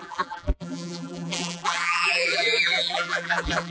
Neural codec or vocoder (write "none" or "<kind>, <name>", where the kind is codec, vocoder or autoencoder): vocoder, BigVGAN v2